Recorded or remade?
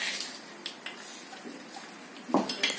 recorded